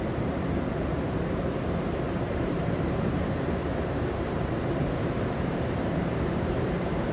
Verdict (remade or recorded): remade